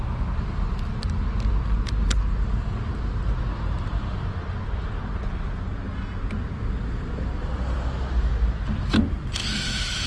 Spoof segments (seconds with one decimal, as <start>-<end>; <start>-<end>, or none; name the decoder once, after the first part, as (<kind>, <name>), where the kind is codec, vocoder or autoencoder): 9.4-10.1 (autoencoder, DAC-VAE)

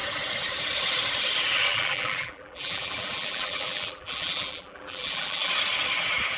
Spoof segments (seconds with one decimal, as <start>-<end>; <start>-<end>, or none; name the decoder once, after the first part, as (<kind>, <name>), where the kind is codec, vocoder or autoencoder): 1.7-5.5 (vocoder, BigVGAN v2)

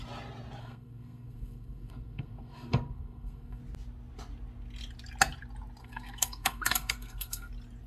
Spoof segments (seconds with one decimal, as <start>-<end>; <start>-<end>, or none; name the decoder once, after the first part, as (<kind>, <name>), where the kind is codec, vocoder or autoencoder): 0.6-3.6 (codec, SNAC); 5.8-7.5